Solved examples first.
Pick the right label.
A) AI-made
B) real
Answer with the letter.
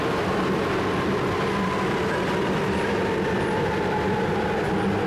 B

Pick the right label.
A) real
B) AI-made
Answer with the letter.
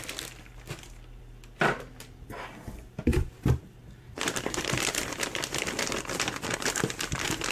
B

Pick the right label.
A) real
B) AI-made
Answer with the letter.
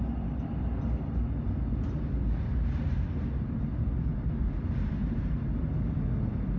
A